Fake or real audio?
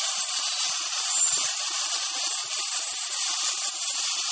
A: real